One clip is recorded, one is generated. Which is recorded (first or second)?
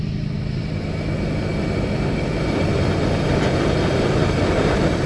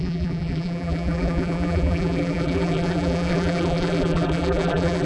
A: first